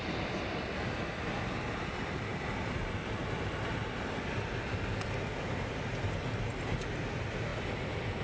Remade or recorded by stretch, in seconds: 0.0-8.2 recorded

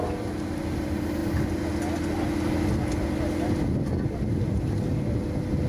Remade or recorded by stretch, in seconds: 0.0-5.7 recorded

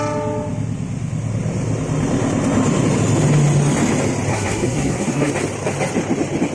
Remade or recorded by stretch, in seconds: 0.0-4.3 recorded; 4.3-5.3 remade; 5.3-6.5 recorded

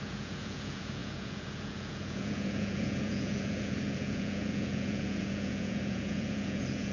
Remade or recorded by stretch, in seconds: 0.0-6.9 remade

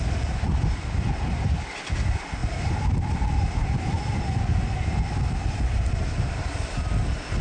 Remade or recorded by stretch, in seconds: 0.0-7.4 recorded

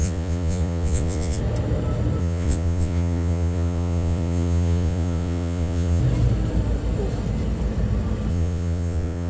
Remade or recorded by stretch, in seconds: 0.0-1.4 remade; 1.4-2.2 recorded; 2.2-6.0 remade; 6.0-8.3 recorded; 8.3-9.3 remade